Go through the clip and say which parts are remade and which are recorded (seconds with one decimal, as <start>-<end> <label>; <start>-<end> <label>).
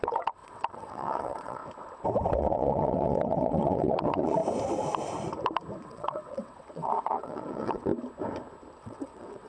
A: 0.0-1.6 remade; 1.6-2.3 recorded; 2.3-4.4 remade; 4.4-5.8 recorded; 5.8-7.9 remade; 7.9-8.8 recorded; 8.8-9.5 remade